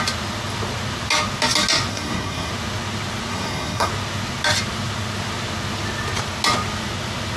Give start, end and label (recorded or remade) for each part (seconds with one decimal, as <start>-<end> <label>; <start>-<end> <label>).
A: 0.0-1.9 recorded; 1.9-2.5 remade; 2.5-3.3 recorded; 3.3-3.9 remade; 3.9-7.4 recorded